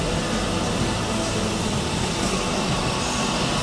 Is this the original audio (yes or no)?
yes